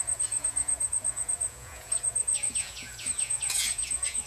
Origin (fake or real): fake